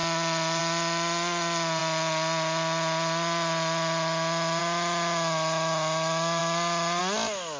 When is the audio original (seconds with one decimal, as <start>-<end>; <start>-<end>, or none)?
0.0-7.6